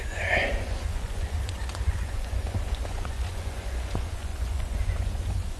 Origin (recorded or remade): remade